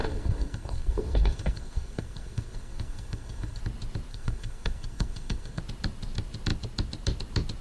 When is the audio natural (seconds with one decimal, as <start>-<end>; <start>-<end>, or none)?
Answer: 3.6-4.1; 5.6-7.6